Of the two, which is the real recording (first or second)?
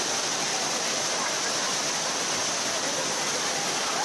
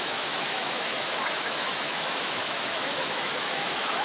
first